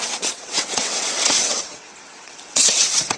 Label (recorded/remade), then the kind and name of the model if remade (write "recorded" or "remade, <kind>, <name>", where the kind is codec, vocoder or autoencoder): remade, vocoder, WaveNeXt